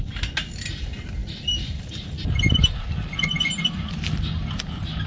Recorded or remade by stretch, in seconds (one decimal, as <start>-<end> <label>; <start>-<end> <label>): 0.0-5.1 recorded